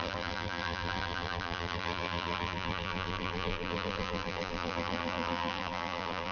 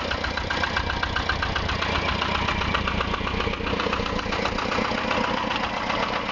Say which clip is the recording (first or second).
second